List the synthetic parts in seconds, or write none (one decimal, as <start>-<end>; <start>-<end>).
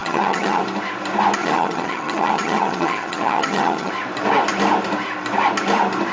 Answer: 0.0-0.6; 1.4-3.9